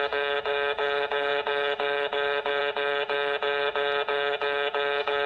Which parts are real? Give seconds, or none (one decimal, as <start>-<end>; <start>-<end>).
none